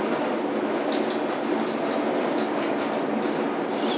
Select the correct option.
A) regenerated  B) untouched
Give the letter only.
B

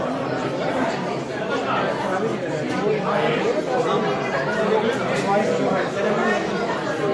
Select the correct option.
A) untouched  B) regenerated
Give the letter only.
A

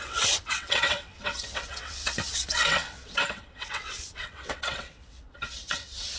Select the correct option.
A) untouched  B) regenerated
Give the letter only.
B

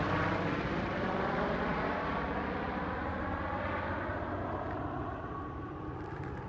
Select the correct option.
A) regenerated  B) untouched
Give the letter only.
B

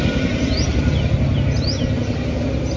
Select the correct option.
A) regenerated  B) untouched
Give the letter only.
B